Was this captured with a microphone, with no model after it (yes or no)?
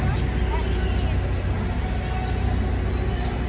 yes